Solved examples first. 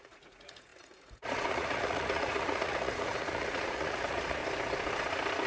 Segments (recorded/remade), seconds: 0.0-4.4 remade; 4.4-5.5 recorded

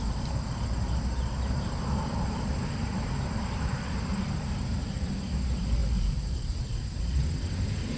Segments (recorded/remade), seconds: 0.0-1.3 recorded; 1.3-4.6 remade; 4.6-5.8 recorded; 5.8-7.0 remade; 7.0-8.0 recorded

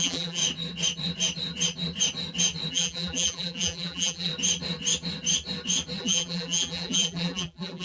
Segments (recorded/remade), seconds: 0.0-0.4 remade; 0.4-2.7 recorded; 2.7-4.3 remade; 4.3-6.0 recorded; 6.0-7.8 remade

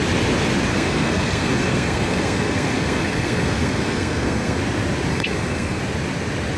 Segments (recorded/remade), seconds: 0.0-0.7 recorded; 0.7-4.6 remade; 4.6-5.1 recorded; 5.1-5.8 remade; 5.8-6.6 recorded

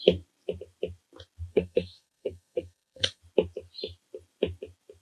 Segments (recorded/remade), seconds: 0.0-1.5 recorded; 1.5-3.2 remade; 3.2-5.0 recorded

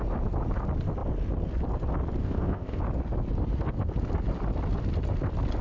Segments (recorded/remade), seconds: 0.0-2.2 recorded; 2.2-2.8 remade; 2.8-5.6 recorded